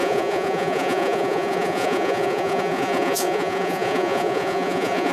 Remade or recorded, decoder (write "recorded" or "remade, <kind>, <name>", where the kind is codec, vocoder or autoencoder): remade, vocoder, Vocos